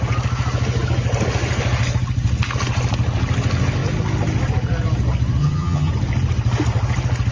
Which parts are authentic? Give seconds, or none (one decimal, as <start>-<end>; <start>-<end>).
0.0-5.4; 5.9-7.3